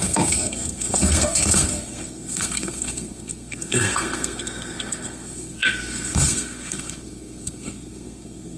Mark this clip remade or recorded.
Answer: remade